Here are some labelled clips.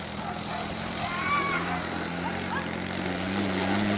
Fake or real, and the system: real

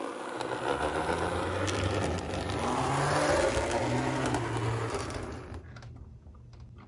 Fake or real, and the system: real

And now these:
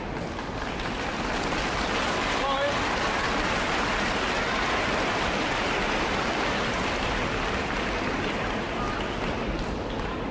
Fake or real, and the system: real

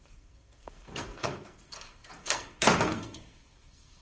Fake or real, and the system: fake, codec, SNAC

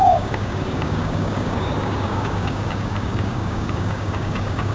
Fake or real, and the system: fake, codec, DAC